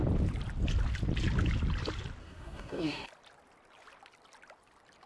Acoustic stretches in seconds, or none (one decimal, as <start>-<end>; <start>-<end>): 0.0-2.2; 3.1-5.1